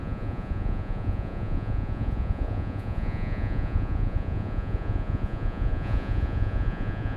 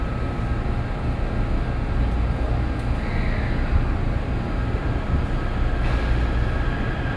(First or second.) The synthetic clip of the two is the first